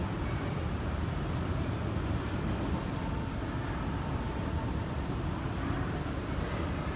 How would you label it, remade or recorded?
recorded